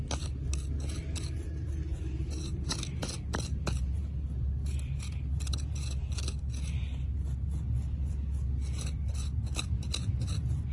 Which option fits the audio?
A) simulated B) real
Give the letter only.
B